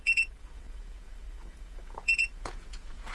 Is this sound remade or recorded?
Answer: remade